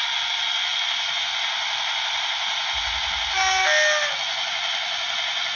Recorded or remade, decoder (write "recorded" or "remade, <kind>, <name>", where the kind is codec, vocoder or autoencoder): recorded